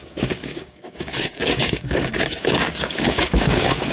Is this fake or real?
fake